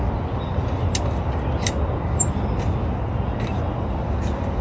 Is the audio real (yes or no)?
yes